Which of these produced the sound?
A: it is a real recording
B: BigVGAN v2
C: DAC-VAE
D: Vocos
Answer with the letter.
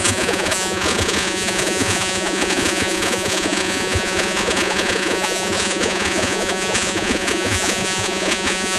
D